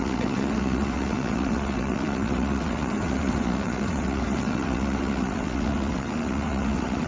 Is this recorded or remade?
remade